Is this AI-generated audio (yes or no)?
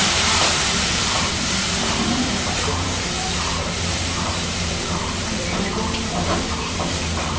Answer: yes